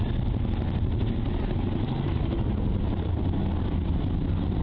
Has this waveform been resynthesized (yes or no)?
no